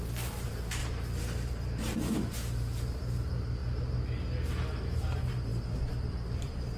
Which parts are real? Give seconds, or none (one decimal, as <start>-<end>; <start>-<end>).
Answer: 3.6-5.0